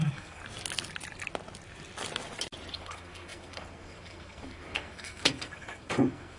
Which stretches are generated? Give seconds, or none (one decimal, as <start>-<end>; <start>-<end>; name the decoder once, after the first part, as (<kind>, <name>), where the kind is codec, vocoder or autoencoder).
0.0-0.4 (codec, SNAC); 2.7-6.4